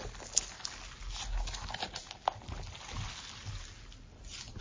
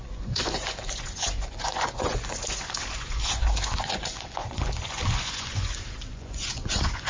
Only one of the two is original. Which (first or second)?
first